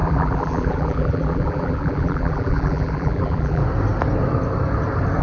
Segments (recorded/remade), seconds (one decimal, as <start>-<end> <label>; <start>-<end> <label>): 0.0-3.6 remade; 3.6-5.2 recorded